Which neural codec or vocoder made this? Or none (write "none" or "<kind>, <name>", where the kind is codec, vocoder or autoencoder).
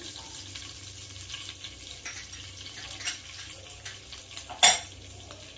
none